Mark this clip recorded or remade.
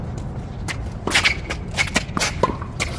recorded